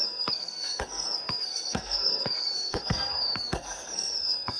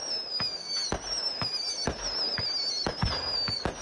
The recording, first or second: second